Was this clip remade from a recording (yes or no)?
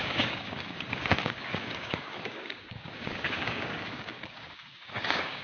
yes